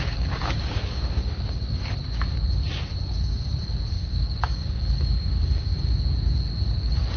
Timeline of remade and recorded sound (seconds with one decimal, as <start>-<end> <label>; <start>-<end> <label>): 0.0-1.8 remade; 1.8-3.9 recorded; 3.9-5.7 remade; 5.7-6.8 recorded; 6.8-7.2 remade